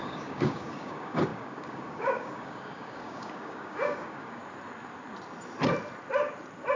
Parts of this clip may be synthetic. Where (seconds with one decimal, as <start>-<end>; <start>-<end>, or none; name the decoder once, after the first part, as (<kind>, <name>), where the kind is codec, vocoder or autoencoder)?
0.0-4.4 (codec, DAC)

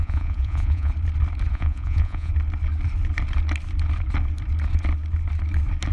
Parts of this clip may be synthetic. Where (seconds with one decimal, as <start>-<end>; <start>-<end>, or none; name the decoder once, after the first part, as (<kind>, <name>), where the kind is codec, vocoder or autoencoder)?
0.0-0.9 (vocoder, Vocos); 1.5-2.3

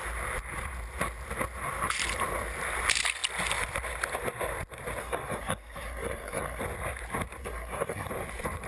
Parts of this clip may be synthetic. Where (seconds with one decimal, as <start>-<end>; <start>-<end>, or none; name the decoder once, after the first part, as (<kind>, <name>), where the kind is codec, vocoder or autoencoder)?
5.0-6.6 (codec, SNAC); 7.4-8.1

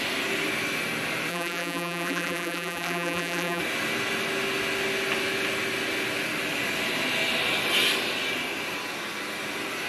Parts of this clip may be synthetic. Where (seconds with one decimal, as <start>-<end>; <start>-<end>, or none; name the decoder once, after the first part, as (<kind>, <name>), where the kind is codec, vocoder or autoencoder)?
1.3-3.6 (vocoder, BigVGAN v2)

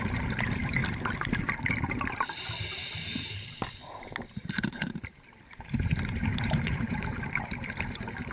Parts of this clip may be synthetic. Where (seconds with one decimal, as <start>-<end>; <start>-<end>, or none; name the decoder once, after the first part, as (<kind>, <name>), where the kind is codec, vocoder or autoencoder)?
0.0-0.8 (vocoder, BigVGAN v2); 2.6-8.3

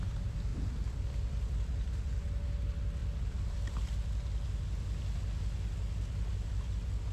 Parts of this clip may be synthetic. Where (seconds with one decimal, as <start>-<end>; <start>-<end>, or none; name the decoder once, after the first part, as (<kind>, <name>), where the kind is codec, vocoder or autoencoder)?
none

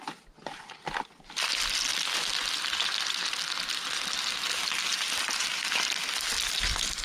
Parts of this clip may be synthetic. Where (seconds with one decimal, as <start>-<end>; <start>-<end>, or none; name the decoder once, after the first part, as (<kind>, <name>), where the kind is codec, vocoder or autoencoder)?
none